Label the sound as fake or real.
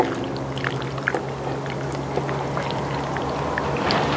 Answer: real